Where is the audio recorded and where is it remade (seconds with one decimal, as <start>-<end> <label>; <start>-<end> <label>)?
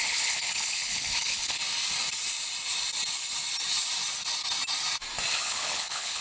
0.0-1.6 remade; 1.6-5.3 recorded; 5.3-6.2 remade